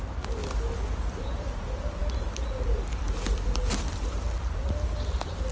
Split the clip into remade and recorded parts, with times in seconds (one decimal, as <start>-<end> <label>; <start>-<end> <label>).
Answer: 0.0-5.5 recorded